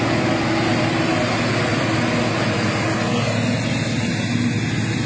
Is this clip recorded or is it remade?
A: recorded